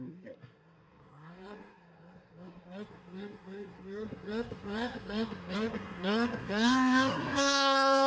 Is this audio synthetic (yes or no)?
yes